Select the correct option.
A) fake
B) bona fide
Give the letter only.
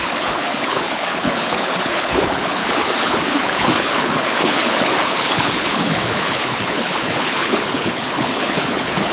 A